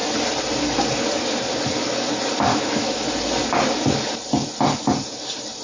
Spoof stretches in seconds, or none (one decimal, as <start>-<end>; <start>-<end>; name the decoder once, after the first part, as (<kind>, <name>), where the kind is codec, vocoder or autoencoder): 2.5-3.1 (autoencoder, DAC-VAE)